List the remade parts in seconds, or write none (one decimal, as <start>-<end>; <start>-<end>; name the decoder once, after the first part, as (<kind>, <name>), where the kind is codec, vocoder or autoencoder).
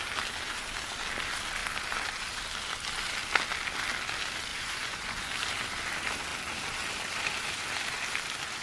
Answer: 4.5-5.3 (vocoder, Vocos)